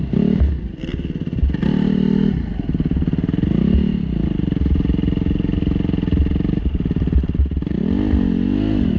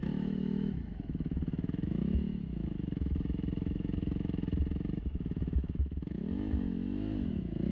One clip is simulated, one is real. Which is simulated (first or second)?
second